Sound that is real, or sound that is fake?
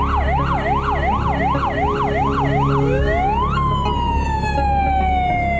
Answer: real